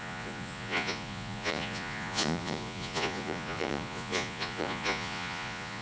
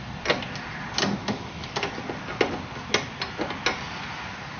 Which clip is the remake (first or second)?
first